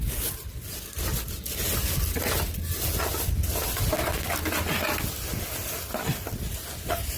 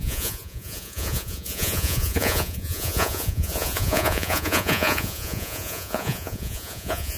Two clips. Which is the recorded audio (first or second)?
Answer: first